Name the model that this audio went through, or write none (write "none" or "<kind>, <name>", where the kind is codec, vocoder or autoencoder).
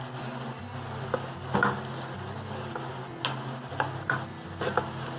none